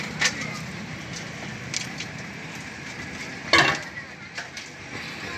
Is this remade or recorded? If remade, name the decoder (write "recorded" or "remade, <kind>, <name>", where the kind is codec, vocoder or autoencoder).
recorded